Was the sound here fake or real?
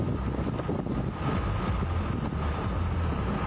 real